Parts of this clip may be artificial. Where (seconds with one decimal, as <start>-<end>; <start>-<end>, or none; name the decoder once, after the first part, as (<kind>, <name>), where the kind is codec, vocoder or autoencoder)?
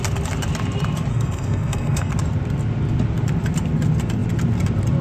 1.1-2.1 (codec, SNAC)